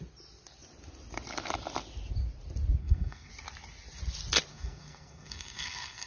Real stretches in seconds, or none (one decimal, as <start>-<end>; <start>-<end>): 0.0-2.8; 3.3-4.5